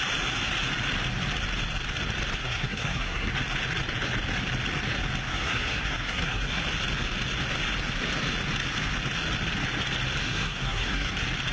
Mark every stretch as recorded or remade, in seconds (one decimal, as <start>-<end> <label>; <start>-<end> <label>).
0.0-2.4 recorded; 2.4-3.3 remade; 3.3-5.3 recorded; 5.3-6.6 remade; 6.6-10.2 recorded; 10.2-11.1 remade; 11.1-11.5 recorded